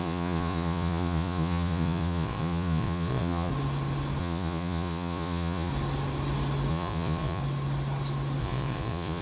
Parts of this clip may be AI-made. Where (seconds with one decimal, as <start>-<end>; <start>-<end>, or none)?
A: 0.0-3.5; 4.2-5.7; 6.7-7.4; 8.4-9.2